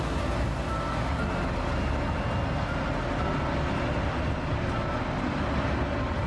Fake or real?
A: real